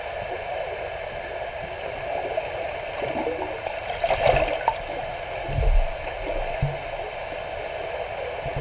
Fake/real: real